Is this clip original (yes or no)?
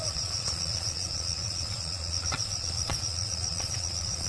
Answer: no